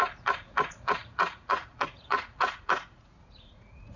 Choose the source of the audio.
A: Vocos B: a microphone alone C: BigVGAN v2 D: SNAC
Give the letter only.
A